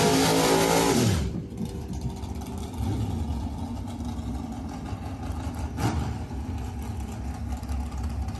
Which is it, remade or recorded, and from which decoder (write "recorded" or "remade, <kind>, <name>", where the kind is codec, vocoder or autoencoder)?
recorded